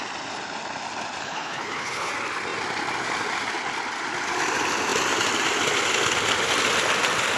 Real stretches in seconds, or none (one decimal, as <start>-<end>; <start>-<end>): 0.0-1.2; 2.1-7.4